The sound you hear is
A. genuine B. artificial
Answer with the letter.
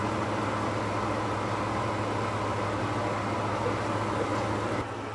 A